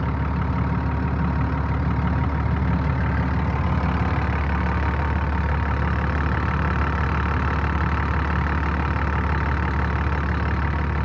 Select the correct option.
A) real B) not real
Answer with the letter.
A